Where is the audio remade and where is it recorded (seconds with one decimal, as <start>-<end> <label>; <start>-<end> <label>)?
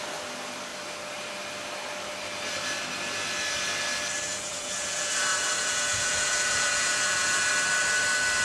0.0-4.3 recorded; 4.3-7.5 remade; 7.5-8.4 recorded